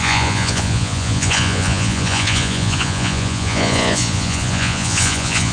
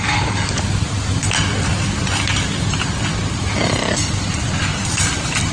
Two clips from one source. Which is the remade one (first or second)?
first